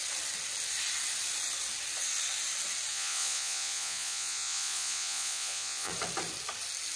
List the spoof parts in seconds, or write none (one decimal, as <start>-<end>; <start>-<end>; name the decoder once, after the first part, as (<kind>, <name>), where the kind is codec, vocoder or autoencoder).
2.9-5.9 (vocoder, Vocos)